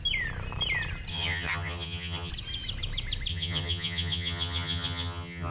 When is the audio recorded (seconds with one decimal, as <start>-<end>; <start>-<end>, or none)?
0.0-1.1; 2.3-3.3